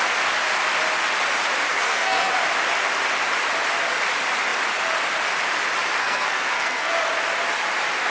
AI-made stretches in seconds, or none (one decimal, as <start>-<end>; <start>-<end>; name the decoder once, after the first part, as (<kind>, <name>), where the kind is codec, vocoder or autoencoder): 1.7-2.3 (codec, SNAC); 6.0-6.9